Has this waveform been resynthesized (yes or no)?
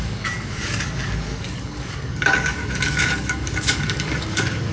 yes